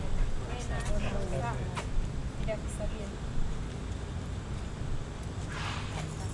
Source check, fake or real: real